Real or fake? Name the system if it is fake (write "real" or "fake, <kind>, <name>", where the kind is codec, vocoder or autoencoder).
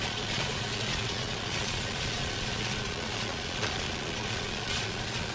fake, vocoder, Vocos